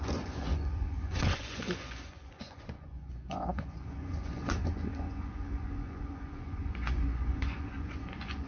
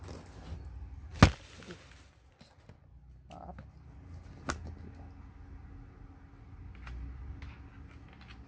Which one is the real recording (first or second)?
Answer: second